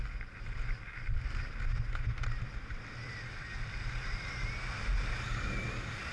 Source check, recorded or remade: recorded